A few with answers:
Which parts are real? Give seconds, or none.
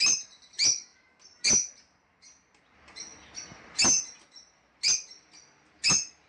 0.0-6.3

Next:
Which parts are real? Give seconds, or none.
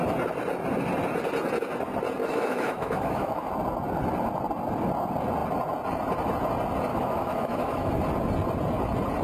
0.0-2.2; 3.5-6.9; 7.9-9.2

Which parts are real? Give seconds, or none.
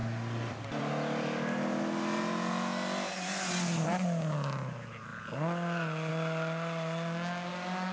0.0-7.9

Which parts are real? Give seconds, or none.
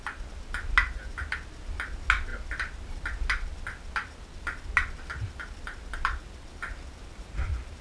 0.0-7.8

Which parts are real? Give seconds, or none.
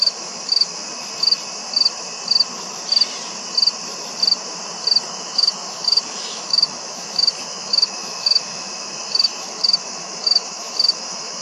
0.8-5.1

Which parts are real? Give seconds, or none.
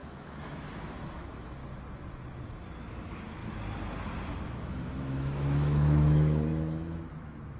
1.6-2.9; 3.4-4.4